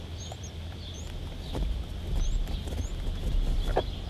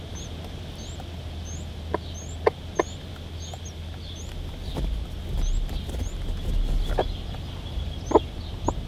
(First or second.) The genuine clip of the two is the second